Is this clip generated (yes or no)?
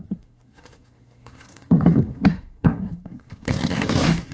yes